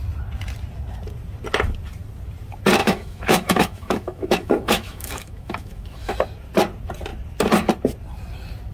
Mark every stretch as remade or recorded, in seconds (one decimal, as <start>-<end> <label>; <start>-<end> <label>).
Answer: 0.0-2.8 recorded; 2.8-6.1 remade; 6.1-8.7 recorded